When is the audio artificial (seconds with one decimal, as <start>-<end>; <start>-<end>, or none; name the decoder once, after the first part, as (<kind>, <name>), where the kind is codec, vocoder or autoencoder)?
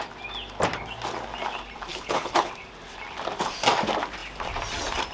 1.9-2.5 (codec, HILCodec)